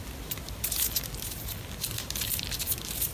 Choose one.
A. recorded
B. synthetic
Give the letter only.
A